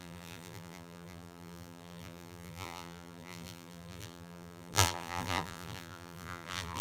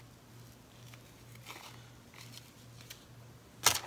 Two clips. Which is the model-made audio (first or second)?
first